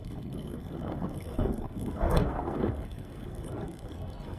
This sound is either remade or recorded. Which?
remade